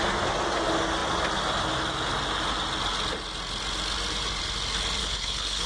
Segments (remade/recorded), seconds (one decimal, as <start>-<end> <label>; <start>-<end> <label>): 0.0-5.0 recorded; 5.0-5.7 remade